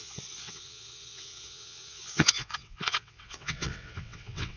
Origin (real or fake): fake